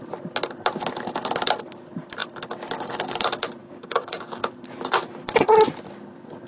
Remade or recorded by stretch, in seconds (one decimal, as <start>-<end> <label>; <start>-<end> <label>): 0.0-3.6 recorded; 3.6-4.5 remade; 4.5-6.5 recorded